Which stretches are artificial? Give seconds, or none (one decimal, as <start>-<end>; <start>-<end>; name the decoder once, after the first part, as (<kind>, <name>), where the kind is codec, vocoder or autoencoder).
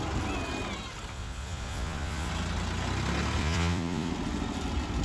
1.1-2.3 (vocoder, Vocos); 3.4-4.1